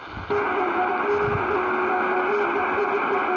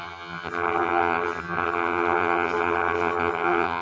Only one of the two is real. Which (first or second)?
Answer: first